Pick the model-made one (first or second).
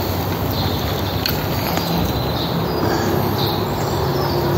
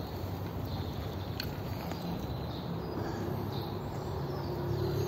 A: second